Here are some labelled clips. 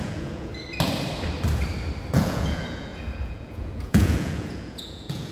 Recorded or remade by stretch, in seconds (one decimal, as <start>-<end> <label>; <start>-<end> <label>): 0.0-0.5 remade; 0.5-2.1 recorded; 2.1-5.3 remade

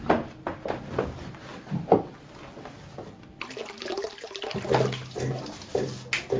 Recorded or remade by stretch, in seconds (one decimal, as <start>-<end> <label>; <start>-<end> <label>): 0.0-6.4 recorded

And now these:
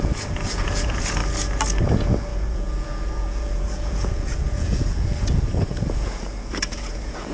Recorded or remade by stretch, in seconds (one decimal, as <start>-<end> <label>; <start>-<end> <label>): 0.0-1.2 remade; 1.2-1.9 recorded; 1.9-7.3 remade

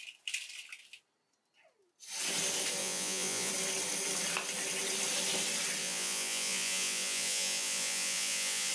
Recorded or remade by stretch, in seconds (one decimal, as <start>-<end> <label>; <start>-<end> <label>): 0.0-2.8 recorded; 2.8-3.5 remade; 3.5-5.8 recorded; 5.8-8.7 remade

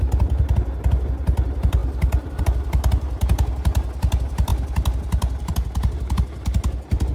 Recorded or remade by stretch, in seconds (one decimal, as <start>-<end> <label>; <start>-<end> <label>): 0.0-7.1 recorded